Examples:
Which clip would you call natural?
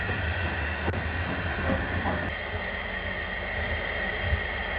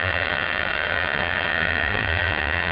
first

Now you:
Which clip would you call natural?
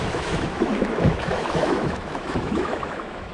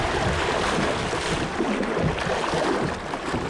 second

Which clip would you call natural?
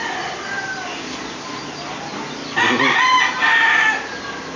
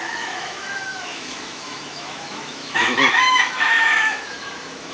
first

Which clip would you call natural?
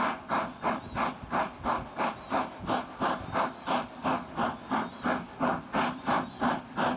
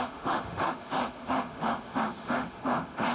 first